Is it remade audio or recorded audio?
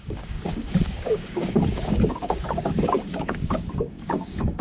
remade